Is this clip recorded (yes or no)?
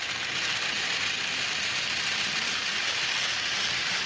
yes